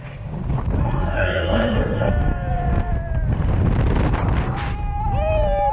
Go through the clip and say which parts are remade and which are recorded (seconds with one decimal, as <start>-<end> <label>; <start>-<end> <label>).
0.0-0.8 recorded; 0.8-2.1 remade; 2.1-5.7 recorded